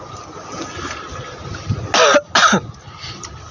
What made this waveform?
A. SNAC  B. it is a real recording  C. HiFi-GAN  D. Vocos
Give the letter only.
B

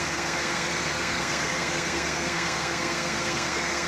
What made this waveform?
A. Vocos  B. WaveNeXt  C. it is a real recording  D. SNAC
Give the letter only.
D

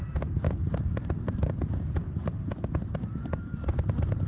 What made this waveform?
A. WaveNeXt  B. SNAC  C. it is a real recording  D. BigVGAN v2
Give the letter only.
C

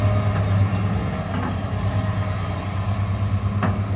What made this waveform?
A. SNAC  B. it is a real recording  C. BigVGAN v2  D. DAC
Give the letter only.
B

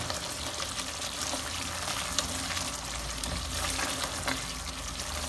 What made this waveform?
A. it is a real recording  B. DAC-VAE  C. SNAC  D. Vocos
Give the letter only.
A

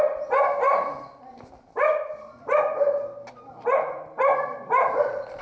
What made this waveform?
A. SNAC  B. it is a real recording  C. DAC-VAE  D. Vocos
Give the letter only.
B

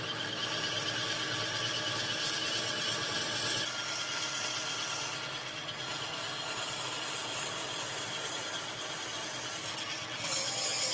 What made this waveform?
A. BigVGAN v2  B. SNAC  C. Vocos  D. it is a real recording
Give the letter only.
D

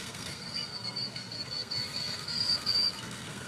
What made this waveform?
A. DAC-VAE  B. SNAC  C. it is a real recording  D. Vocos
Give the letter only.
B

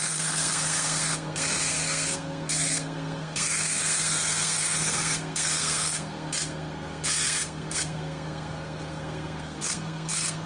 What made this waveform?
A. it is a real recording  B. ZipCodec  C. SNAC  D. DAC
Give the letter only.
C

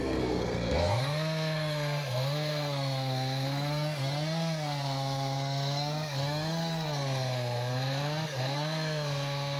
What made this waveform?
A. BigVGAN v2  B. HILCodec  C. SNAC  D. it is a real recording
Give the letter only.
C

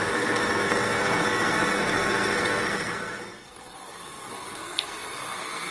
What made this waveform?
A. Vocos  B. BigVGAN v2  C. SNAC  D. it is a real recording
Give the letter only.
C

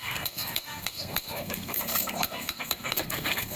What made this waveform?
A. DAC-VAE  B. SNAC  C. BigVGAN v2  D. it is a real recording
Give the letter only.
B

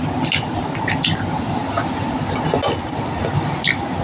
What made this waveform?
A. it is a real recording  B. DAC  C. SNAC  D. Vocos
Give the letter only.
A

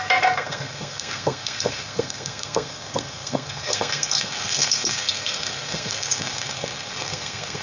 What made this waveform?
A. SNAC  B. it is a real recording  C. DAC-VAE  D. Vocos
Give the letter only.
A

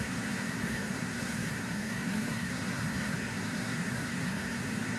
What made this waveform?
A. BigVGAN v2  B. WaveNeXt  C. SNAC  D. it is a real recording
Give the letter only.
C